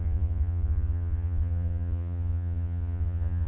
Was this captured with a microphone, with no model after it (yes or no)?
no